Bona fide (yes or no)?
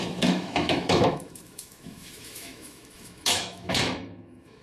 no